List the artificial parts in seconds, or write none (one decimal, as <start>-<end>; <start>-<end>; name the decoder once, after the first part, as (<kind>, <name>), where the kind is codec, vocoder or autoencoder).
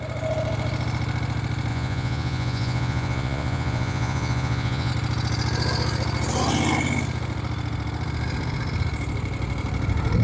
1.7-4.9 (vocoder, Vocos)